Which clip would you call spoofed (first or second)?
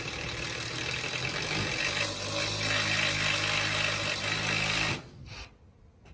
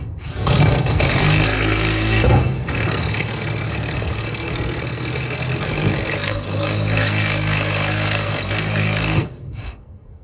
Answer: second